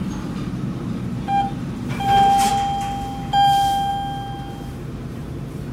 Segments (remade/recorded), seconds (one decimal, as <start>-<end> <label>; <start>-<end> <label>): 0.0-2.5 remade; 2.5-3.3 recorded; 3.3-3.9 remade; 3.9-4.7 recorded; 4.7-5.7 remade